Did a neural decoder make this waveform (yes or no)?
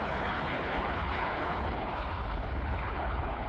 yes